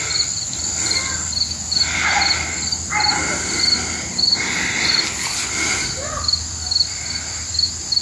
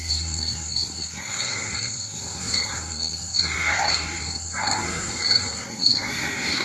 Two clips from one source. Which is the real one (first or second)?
first